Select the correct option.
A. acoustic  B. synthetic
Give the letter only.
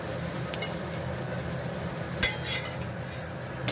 A